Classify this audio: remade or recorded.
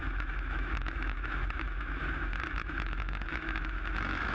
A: remade